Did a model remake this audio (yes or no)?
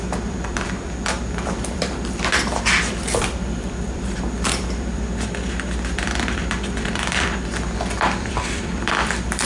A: yes